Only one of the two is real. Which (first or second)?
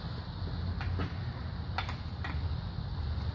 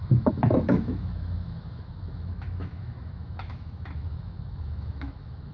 first